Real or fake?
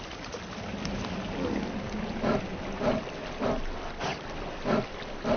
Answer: real